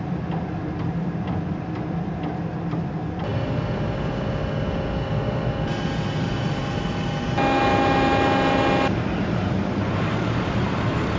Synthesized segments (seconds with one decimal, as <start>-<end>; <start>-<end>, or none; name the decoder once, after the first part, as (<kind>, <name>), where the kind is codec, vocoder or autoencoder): none